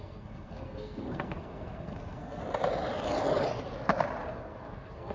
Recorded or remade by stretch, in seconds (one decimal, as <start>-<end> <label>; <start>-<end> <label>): 0.0-2.4 remade; 2.4-4.3 recorded; 4.3-5.1 remade